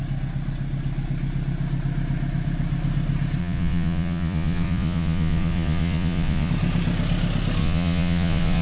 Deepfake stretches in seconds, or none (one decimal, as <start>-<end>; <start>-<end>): 3.4-6.5; 7.6-8.6